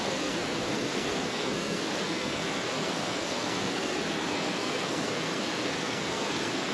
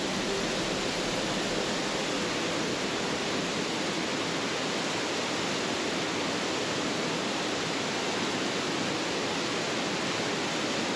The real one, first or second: second